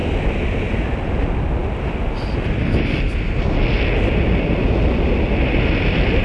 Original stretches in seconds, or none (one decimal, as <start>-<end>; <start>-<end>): 0.0-6.2